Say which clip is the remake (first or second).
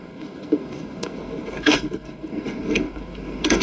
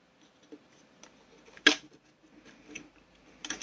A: first